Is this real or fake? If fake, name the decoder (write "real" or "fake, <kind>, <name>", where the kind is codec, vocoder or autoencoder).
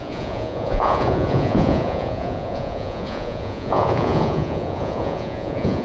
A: fake, vocoder, Vocos